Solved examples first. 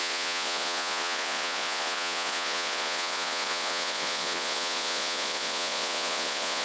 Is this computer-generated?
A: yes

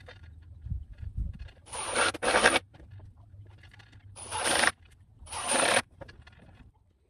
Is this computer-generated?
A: yes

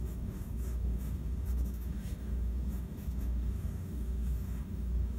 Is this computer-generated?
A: yes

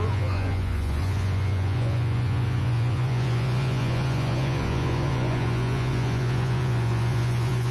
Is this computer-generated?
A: yes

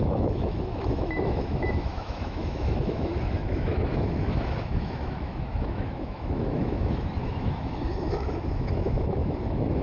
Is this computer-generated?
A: yes